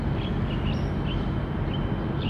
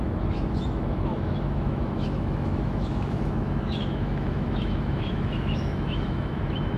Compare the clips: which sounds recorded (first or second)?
first